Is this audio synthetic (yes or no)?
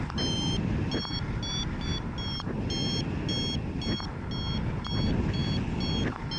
no